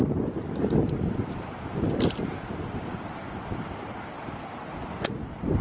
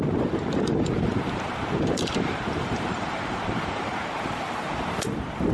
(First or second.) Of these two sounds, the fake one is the second